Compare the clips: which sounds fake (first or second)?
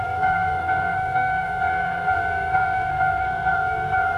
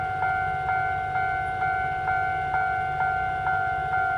first